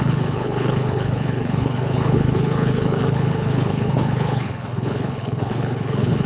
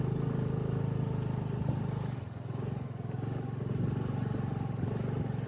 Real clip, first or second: second